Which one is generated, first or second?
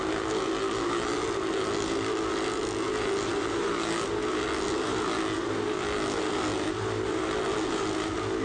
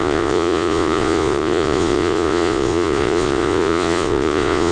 second